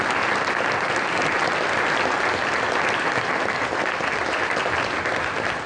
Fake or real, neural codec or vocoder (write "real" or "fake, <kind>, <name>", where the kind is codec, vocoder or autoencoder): fake, vocoder, BigVGAN v2